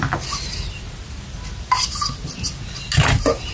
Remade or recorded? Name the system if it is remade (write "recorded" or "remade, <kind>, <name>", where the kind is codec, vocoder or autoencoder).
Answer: recorded